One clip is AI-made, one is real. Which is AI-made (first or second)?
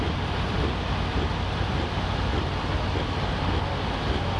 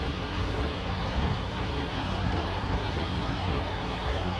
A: second